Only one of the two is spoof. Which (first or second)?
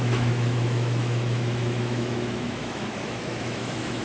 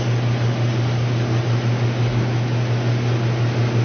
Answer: first